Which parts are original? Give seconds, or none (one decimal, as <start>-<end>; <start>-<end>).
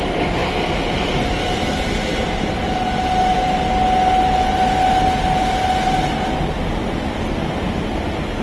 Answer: 0.0-8.4